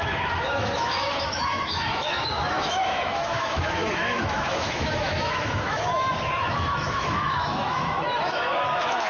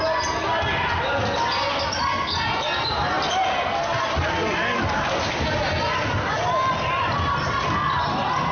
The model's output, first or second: first